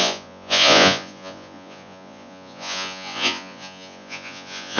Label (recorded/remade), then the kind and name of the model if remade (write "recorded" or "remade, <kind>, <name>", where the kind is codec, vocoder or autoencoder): remade, vocoder, Vocos